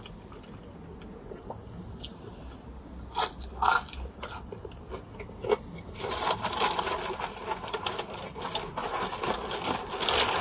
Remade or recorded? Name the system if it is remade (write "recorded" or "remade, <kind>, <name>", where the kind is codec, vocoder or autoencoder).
recorded